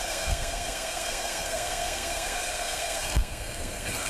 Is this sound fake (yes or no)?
yes